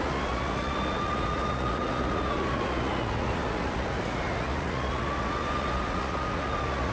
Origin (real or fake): fake